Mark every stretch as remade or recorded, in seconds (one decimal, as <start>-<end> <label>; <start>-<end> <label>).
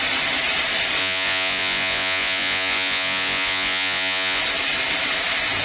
0.0-1.0 recorded; 1.0-4.4 remade; 4.4-5.6 recorded